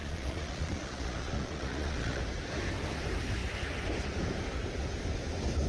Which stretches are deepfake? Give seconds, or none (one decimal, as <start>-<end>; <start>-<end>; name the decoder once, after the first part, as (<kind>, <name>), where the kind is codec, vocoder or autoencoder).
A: 0.0-2.2 (vocoder, Vocos)